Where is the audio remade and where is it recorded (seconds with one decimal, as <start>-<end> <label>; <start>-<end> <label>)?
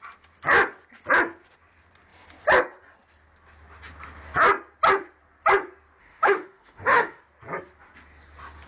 0.0-6.0 recorded; 6.0-7.2 remade; 7.2-8.7 recorded